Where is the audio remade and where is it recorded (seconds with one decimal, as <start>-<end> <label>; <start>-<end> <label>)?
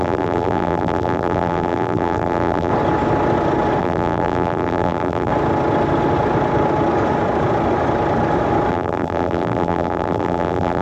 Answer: 0.0-2.7 remade; 2.7-3.8 recorded; 3.8-5.3 remade; 5.3-8.7 recorded; 8.7-10.8 remade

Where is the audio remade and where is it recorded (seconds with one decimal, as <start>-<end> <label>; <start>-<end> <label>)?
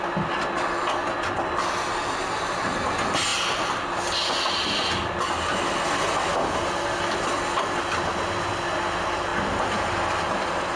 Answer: 0.0-10.8 recorded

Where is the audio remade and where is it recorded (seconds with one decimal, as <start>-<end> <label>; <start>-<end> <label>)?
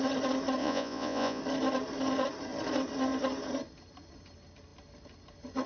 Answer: 0.0-0.6 recorded; 0.6-1.4 remade; 1.4-5.7 recorded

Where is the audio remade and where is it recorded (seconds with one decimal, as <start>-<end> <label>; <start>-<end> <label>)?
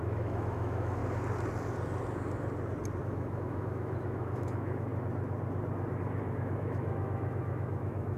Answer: 0.0-1.0 remade; 1.0-3.0 recorded; 3.0-4.9 remade; 4.9-6.0 recorded; 6.0-8.2 remade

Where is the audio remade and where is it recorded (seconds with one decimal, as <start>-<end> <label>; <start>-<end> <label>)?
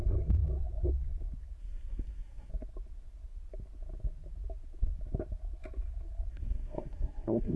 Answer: 0.0-1.6 recorded; 1.6-2.5 remade; 2.5-6.3 recorded; 6.3-7.6 remade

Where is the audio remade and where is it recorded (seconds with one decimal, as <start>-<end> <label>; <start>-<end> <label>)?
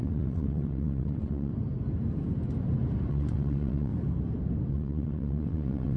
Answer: 0.0-1.5 remade; 1.5-3.1 recorded; 3.1-3.9 remade; 3.9-4.7 recorded; 4.7-6.0 remade